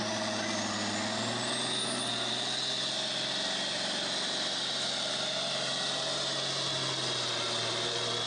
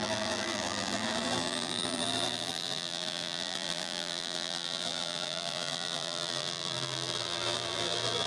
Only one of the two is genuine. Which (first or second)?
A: first